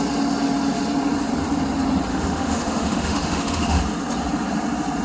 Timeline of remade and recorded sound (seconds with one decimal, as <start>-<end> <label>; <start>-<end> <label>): 0.0-2.1 recorded; 2.1-3.8 remade; 3.8-5.0 recorded

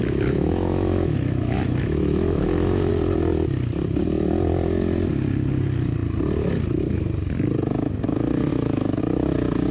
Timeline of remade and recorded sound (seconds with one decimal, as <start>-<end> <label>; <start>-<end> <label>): 0.0-2.9 remade; 2.9-8.5 recorded; 8.5-9.0 remade; 9.0-9.7 recorded

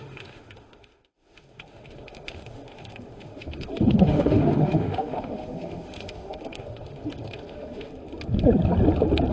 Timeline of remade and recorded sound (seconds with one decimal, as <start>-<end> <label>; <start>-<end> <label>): 0.0-7.9 remade; 7.9-9.3 recorded

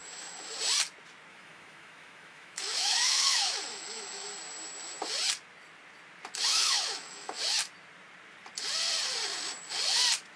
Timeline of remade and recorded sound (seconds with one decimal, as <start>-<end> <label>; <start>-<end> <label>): 0.0-0.5 remade; 0.5-1.3 recorded; 1.3-4.3 remade; 4.3-6.5 recorded; 6.5-7.4 remade; 7.4-10.4 recorded

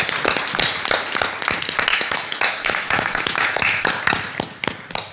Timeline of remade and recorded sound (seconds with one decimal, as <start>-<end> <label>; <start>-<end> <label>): 0.0-1.9 recorded; 1.9-3.9 remade; 3.9-5.1 recorded

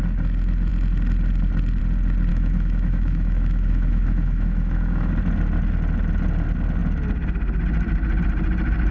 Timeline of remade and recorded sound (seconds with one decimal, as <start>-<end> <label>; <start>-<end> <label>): 0.0-2.3 recorded; 2.3-5.1 remade; 5.1-8.9 recorded

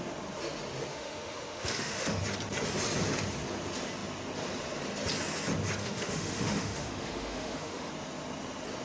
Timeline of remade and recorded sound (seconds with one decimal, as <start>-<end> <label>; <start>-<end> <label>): 0.0-0.9 recorded; 0.9-2.2 remade; 2.2-5.8 recorded; 5.8-7.9 remade; 7.9-8.8 recorded

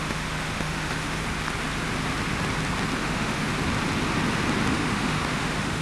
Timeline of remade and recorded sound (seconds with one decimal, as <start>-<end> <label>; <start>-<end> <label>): 0.0-1.2 remade; 1.2-3.0 recorded; 3.0-3.5 remade; 3.5-4.7 recorded; 4.7-5.8 remade